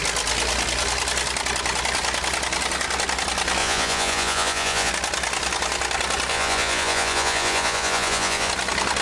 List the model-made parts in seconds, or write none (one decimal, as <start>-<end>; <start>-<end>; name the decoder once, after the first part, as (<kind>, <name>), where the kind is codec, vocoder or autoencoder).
3.6-4.9 (vocoder, Vocos); 6.3-8.5